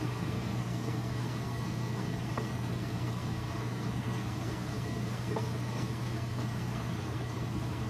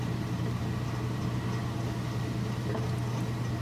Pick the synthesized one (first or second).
first